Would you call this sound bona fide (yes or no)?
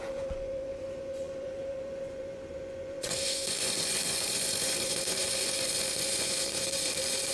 no